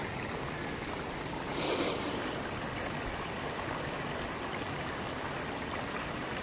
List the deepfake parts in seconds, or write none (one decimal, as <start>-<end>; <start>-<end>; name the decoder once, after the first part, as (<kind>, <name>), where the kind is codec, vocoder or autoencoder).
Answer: none